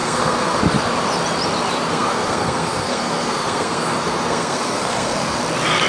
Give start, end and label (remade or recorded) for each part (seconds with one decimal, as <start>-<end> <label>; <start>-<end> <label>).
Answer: 0.0-0.6 remade; 0.6-1.9 recorded; 1.9-5.4 remade; 5.4-5.9 recorded